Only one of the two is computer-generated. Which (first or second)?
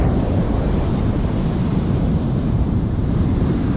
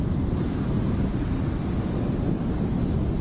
first